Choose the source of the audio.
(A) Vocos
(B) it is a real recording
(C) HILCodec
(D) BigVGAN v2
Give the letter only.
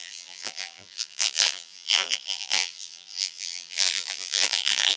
D